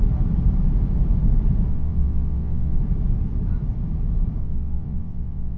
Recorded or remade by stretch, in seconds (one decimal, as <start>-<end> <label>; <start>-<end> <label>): 0.0-1.7 recorded; 1.7-2.8 remade; 2.8-4.4 recorded; 4.4-5.6 remade